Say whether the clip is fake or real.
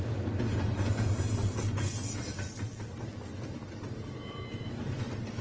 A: real